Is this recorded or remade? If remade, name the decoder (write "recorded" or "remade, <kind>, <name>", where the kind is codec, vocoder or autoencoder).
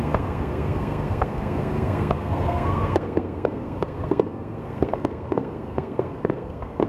remade, codec, SNAC